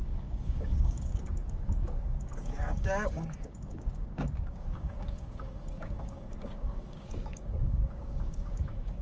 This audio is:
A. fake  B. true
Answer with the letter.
A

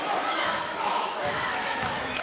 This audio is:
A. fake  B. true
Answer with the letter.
A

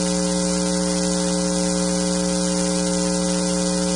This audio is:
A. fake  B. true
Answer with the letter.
B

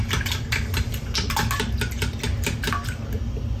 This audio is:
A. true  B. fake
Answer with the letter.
A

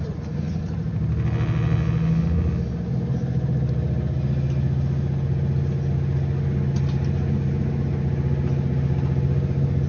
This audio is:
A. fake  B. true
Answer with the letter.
B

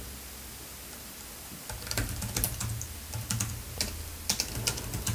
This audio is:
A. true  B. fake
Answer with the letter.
A